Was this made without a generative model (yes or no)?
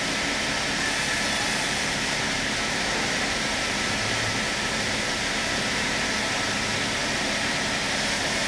no